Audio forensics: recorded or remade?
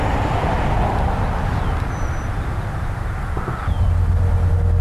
recorded